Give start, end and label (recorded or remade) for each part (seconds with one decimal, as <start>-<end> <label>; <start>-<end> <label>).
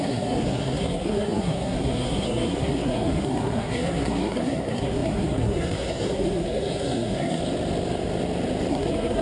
0.0-7.4 remade; 7.4-8.7 recorded; 8.7-9.2 remade